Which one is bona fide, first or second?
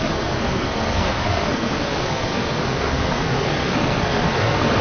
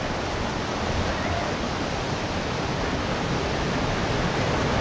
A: second